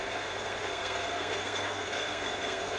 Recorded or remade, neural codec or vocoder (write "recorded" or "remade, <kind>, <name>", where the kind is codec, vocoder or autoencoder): remade, codec, SNAC